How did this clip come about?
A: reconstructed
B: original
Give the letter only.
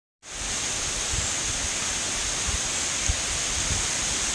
B